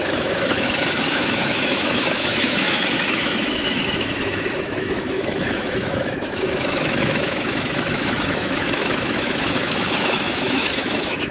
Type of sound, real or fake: fake